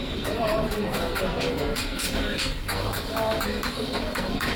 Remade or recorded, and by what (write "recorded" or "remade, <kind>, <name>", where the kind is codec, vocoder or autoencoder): remade, codec, SNAC